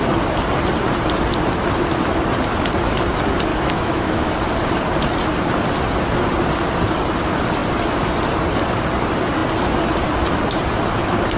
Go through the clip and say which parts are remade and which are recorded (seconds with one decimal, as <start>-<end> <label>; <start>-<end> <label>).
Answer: 0.0-3.5 recorded; 3.5-4.3 remade; 4.3-11.4 recorded